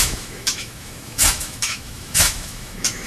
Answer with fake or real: fake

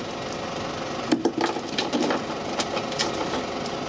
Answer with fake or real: real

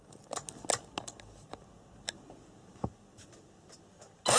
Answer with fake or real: real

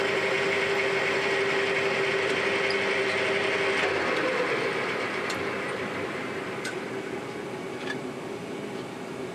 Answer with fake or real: real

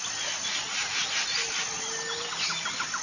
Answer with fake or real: real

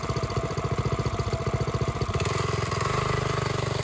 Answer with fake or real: real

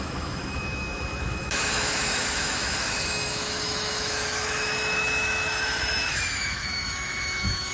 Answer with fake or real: fake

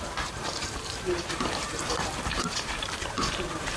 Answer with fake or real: fake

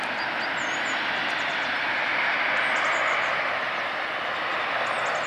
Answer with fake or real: real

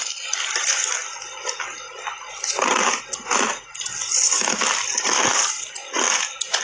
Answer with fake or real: real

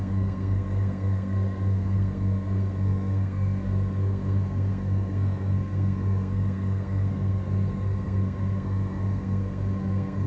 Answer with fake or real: fake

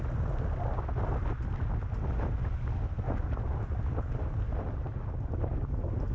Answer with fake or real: real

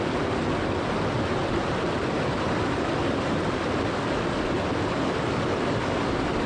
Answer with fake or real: real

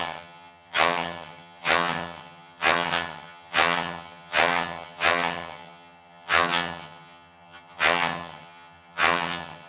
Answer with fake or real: fake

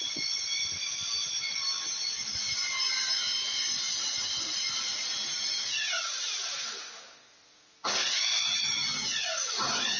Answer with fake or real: real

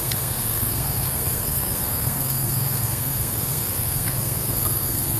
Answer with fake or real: fake